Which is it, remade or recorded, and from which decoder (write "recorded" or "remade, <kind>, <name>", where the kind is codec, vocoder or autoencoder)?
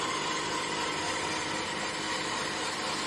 recorded